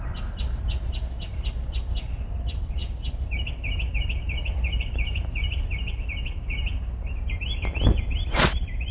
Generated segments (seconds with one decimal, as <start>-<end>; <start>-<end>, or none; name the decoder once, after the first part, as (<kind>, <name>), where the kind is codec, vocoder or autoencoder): none